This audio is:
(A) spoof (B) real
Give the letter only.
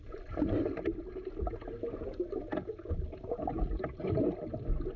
B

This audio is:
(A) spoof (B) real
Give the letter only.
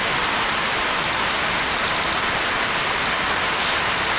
B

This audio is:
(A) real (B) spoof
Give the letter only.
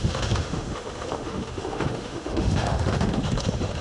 B